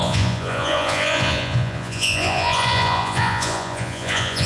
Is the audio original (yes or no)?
no